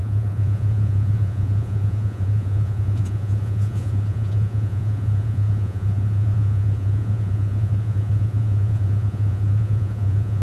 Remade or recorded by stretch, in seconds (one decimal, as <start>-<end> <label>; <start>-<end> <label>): 0.0-10.4 remade